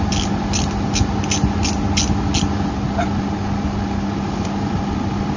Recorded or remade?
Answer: recorded